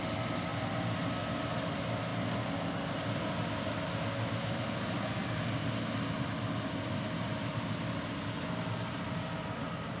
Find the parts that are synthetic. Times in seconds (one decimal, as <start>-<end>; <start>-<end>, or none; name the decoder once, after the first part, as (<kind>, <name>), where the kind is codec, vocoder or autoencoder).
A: none